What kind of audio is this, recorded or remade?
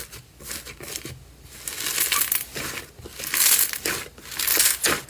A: recorded